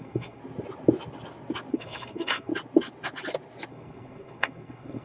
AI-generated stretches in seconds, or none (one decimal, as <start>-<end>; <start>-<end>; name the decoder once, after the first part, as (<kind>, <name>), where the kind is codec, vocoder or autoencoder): 0.0-0.4 (codec, SNAC); 1.7-2.5; 3.7-5.0